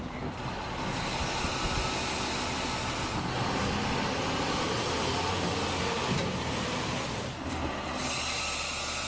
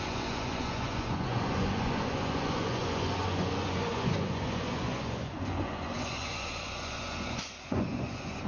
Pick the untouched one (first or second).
first